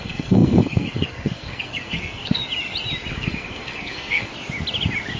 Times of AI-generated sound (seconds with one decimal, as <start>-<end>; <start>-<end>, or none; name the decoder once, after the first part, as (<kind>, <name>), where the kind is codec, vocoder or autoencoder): 0.0-2.4 (codec, SNAC); 3.1-4.3